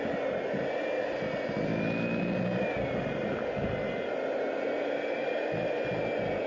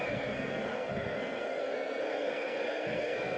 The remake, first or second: second